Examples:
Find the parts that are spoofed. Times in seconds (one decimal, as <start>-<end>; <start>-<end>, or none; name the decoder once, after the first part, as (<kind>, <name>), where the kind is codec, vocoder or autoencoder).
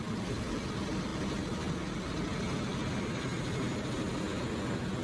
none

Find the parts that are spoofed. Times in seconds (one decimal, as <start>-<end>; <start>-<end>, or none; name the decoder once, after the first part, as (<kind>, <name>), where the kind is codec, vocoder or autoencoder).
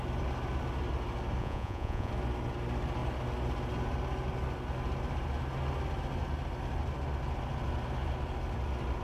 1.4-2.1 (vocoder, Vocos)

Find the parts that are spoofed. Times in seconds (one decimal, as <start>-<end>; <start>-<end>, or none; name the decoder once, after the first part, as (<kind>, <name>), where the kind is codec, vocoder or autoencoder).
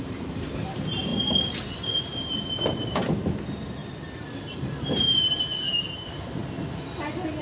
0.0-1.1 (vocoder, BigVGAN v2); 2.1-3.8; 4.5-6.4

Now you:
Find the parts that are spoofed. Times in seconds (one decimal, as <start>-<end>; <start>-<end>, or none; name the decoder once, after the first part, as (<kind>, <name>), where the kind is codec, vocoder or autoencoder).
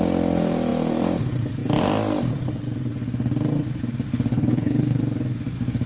4.3-5.0 (codec, HILCodec)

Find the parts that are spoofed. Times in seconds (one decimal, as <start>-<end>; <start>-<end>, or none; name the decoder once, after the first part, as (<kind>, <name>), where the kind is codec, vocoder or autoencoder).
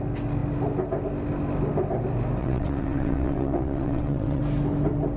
2.4-4.4 (vocoder, WaveNeXt)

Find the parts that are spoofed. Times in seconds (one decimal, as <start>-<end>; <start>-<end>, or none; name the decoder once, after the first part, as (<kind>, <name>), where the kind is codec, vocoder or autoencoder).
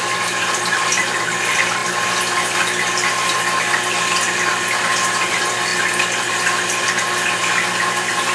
none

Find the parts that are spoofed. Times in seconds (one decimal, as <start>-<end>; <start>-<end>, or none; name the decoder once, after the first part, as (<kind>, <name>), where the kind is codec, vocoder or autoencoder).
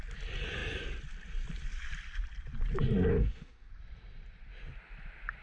3.1-3.7 (autoencoder, DAC-VAE)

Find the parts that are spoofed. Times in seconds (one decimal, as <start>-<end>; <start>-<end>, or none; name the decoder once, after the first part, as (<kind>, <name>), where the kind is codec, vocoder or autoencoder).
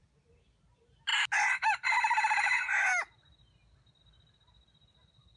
none